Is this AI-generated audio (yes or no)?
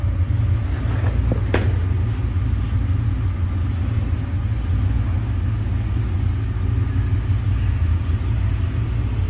no